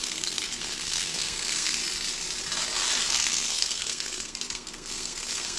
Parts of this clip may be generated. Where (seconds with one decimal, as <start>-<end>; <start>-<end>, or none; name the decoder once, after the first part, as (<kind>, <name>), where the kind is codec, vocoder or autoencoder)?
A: 0.0-1.8 (codec, SNAC); 3.0-5.6